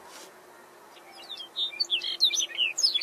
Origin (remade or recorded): recorded